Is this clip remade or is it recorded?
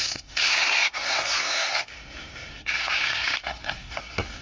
remade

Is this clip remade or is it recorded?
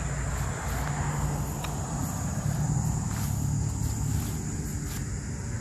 recorded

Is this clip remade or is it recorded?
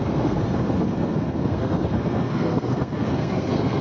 remade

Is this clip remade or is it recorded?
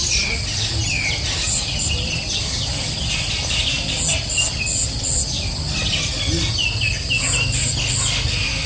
recorded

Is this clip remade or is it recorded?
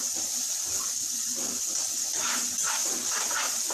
recorded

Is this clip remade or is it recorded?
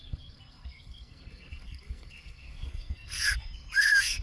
remade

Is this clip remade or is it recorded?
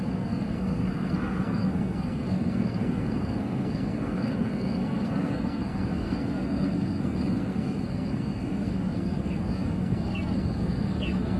remade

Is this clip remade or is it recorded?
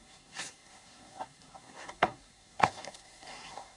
remade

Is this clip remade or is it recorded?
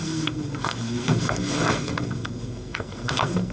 remade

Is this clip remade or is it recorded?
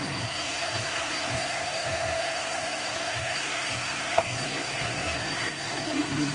remade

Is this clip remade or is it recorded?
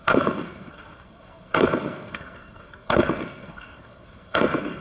remade